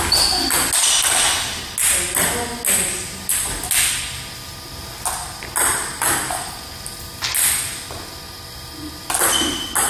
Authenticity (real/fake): real